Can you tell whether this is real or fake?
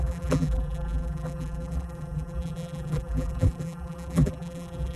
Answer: fake